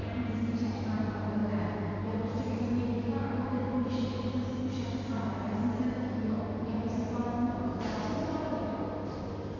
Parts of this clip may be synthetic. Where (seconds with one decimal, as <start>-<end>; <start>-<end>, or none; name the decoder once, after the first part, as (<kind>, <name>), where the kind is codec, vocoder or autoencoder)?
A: none